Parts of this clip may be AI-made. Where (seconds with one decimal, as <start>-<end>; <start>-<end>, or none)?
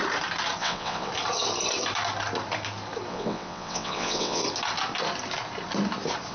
0.6-1.1; 3.1-4.4